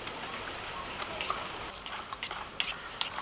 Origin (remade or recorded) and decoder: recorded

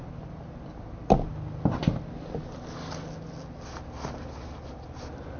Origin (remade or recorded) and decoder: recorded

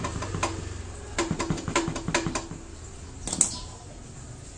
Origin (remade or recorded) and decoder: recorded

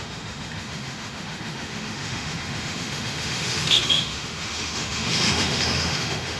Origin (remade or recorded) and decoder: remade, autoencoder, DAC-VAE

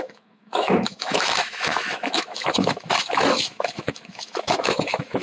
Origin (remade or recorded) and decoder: remade, autoencoder, DAC-VAE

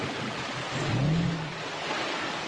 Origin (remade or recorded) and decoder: recorded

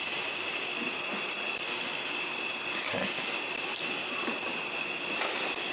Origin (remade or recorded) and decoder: recorded